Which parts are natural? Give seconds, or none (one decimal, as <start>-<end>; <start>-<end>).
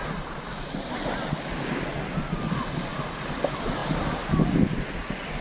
0.0-5.4